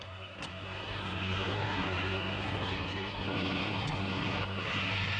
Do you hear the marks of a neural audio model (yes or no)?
yes